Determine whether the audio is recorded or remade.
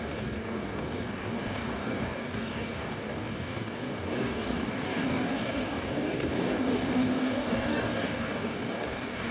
remade